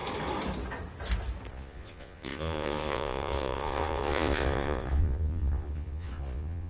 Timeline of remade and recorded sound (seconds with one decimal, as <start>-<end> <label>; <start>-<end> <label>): 0.0-1.5 recorded; 1.5-6.7 remade